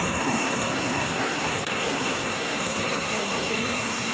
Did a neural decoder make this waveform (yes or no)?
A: yes